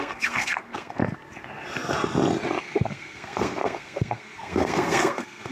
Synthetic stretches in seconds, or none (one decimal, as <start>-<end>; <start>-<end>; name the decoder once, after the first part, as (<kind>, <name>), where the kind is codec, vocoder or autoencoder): 0.0-1.0 (codec, SNAC); 2.6-5.5

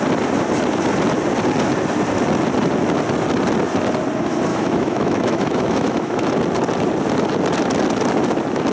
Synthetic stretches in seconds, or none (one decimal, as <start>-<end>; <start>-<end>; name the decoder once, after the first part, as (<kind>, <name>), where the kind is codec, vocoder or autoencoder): 4.5-6.3 (autoencoder, DAC-VAE)

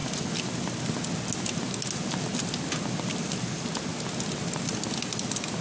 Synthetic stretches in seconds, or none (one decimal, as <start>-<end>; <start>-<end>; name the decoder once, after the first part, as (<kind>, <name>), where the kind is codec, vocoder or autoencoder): none

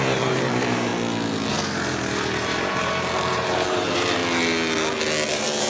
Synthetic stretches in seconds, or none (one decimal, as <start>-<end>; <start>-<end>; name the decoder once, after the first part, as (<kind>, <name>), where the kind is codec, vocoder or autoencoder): 0.0-0.9 (vocoder, BigVGAN v2); 1.5-4.2; 5.3-5.7